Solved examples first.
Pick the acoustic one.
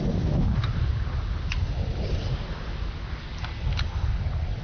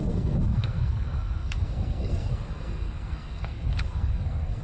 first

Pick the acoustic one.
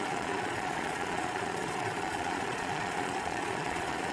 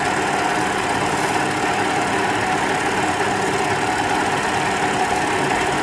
second